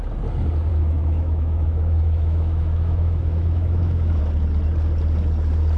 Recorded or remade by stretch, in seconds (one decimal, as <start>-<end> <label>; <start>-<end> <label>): 0.0-0.7 recorded; 0.7-4.2 remade; 4.2-5.8 recorded